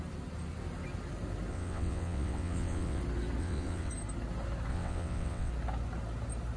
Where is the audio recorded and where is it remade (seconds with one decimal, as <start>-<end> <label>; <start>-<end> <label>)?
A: 0.0-1.5 recorded; 1.5-3.0 remade; 3.0-3.4 recorded; 3.4-3.9 remade; 3.9-4.7 recorded; 4.7-5.5 remade; 5.5-6.6 recorded